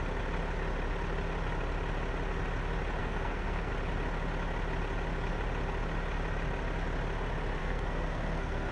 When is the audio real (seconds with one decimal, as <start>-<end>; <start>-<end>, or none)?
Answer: 0.0-3.0; 3.7-7.6